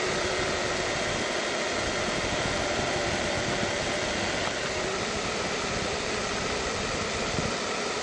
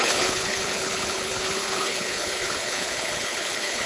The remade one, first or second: second